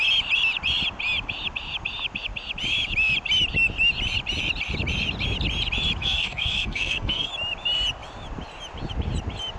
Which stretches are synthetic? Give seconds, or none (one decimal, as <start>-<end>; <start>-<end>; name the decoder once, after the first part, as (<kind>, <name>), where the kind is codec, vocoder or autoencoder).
6.0-7.3 (codec, SNAC)